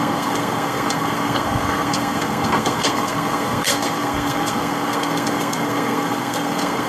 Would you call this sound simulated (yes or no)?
yes